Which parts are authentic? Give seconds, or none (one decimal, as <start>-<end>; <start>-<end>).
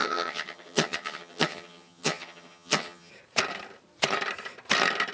3.1-5.1